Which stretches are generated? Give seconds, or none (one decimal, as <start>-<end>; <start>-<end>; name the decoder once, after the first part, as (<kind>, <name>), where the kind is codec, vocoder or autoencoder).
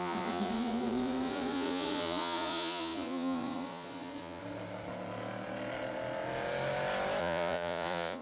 0.0-4.4 (vocoder, Vocos); 7.2-8.2